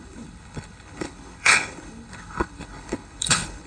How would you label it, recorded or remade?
remade